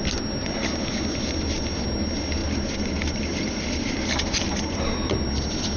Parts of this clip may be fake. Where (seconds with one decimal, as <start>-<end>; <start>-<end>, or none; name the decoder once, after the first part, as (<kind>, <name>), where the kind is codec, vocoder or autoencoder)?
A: 2.4-4.8 (vocoder, BigVGAN v2)